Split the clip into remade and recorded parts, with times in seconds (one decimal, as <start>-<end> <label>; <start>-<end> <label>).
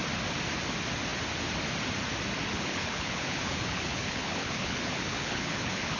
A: 0.0-2.5 recorded; 2.5-6.0 remade